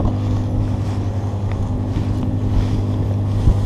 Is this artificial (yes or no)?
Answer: no